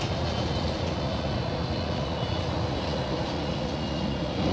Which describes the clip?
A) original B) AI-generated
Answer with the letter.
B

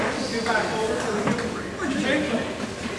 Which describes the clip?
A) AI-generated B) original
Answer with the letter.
B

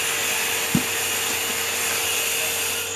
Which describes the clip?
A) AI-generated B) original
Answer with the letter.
B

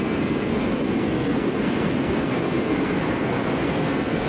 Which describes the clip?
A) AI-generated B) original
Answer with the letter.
A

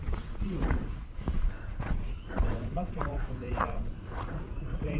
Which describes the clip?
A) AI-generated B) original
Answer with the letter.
A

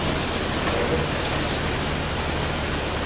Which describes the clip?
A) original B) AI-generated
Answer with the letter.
A